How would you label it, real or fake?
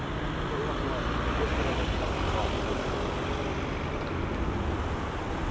real